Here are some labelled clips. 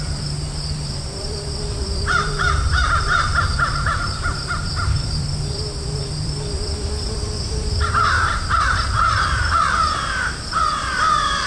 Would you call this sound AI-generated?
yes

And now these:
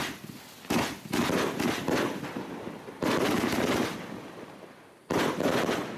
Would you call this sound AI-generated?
no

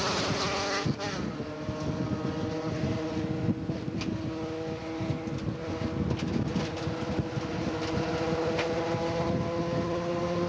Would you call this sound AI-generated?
no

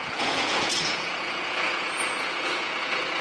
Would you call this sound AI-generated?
yes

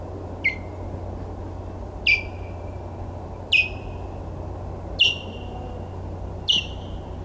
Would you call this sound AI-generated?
no